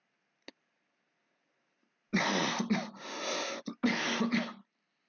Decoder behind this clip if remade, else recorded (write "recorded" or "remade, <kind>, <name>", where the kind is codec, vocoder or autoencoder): recorded